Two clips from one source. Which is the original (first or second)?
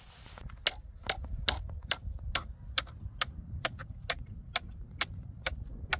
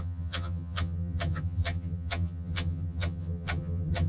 first